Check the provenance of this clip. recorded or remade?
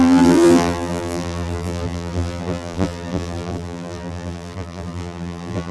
remade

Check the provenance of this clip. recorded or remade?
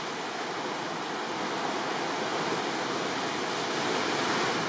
recorded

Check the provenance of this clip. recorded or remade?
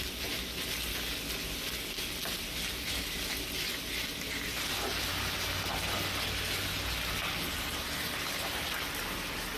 recorded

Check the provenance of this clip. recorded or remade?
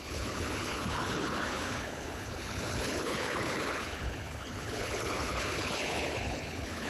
remade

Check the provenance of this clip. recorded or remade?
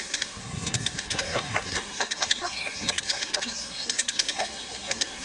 remade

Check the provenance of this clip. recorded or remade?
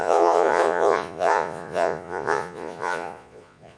remade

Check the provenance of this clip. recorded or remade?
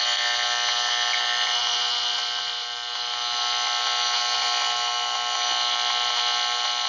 recorded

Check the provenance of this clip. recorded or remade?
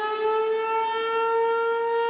recorded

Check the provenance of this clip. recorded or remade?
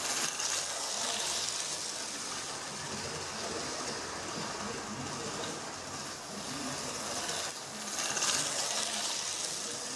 recorded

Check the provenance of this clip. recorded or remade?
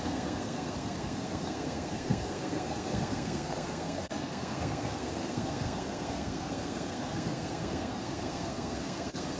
remade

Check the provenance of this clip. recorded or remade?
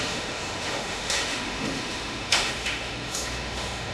remade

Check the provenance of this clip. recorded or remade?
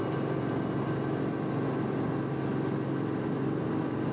recorded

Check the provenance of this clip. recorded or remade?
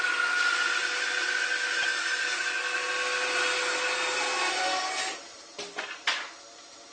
recorded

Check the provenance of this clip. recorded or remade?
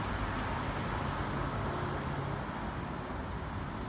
recorded